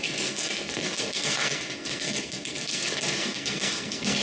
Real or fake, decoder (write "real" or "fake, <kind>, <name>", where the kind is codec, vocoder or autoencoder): fake, codec, SNAC